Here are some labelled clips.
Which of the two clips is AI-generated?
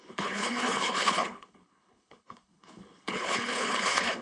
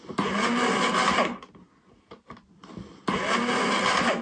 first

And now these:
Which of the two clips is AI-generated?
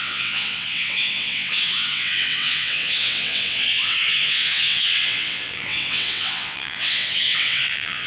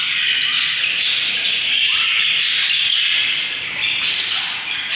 first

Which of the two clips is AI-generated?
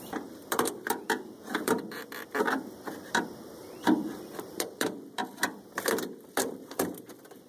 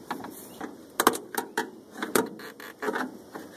first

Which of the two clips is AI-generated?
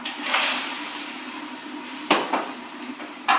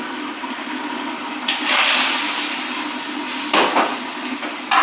first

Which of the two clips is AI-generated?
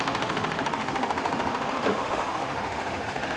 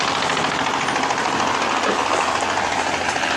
first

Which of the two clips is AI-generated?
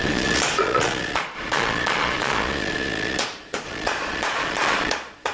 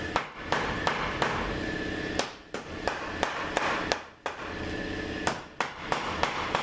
first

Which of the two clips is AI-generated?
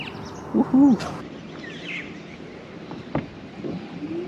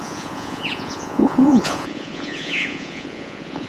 second